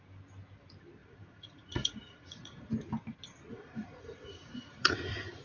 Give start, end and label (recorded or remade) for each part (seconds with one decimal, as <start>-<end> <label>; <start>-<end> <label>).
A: 0.0-1.0 recorded; 1.0-2.7 remade; 2.7-3.5 recorded; 3.5-5.4 remade

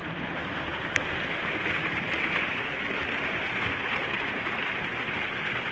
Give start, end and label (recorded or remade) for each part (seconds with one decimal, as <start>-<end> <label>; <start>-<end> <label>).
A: 0.0-4.0 recorded; 4.0-4.6 remade; 4.6-5.7 recorded

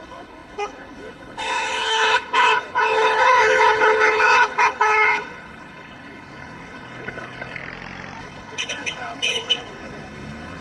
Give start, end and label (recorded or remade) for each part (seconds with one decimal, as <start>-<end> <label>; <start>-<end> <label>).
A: 0.0-7.6 remade; 7.6-8.2 recorded; 8.2-10.6 remade

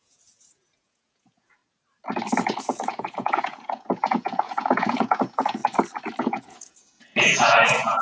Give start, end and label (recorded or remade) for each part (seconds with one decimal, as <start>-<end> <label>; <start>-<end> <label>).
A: 0.0-1.6 remade; 1.6-2.6 recorded; 2.6-5.6 remade; 5.6-6.2 recorded; 6.2-8.0 remade

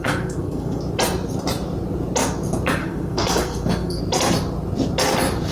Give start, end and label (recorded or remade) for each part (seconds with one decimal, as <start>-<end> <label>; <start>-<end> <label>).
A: 0.0-0.8 remade; 0.8-2.8 recorded; 2.8-4.0 remade; 4.0-5.5 recorded